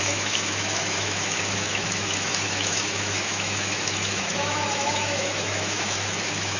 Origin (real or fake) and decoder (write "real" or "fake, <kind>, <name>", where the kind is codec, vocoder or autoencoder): fake, autoencoder, DAC-VAE